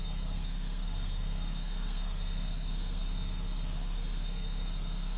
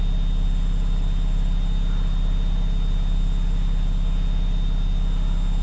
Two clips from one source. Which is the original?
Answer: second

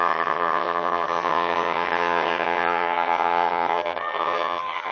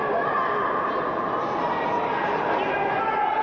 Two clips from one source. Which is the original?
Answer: second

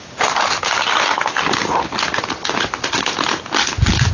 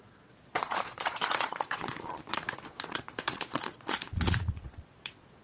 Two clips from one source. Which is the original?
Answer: first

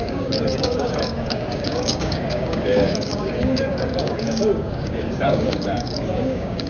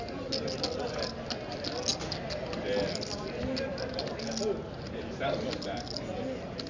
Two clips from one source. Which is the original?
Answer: second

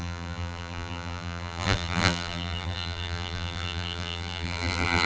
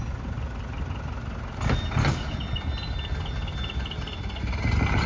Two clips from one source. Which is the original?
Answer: second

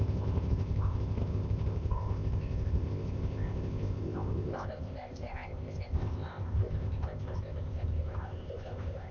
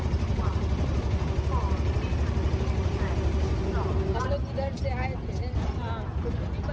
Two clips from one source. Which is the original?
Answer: second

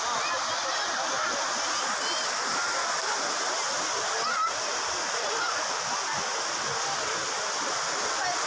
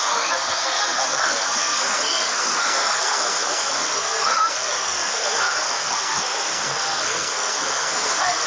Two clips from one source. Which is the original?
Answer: first